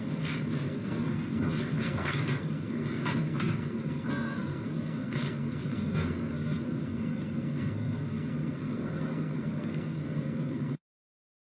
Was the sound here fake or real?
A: fake